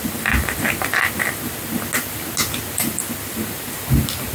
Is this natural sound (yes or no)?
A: yes